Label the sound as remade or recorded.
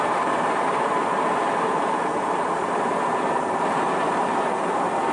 remade